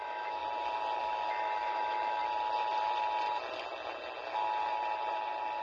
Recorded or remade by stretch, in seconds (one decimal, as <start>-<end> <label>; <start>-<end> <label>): 0.0-0.4 remade; 0.4-1.0 recorded; 1.0-2.2 remade; 2.2-5.6 recorded